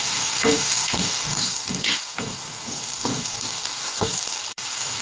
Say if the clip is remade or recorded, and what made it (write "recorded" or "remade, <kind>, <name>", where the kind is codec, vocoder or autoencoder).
remade, codec, DAC